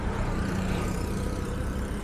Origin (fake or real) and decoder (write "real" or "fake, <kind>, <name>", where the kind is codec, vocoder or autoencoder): fake, vocoder, BigVGAN v2